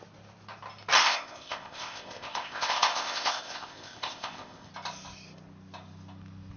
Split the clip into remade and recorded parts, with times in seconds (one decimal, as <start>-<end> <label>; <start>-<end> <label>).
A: 0.0-1.0 recorded; 1.0-4.7 remade; 4.7-6.6 recorded